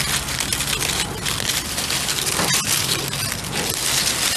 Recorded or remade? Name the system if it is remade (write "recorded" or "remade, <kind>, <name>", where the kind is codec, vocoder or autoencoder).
recorded